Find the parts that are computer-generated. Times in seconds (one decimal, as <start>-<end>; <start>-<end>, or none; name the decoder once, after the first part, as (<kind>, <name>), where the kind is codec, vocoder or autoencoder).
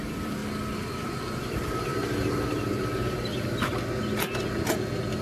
0.0-0.4 (vocoder, BigVGAN v2); 1.4-3.7